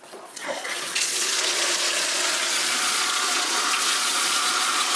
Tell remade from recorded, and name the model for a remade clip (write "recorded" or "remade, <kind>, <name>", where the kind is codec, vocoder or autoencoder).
remade, vocoder, Vocos